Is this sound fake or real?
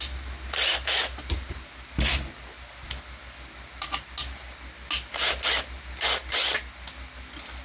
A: real